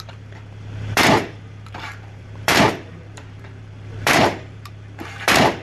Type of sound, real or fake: fake